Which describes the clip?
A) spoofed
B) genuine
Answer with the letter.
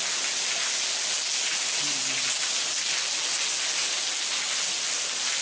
B